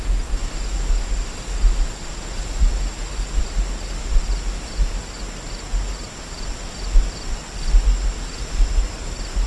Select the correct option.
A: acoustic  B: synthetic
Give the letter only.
A